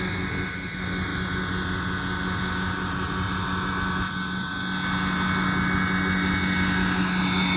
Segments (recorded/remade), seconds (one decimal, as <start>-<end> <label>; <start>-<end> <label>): 0.0-7.6 recorded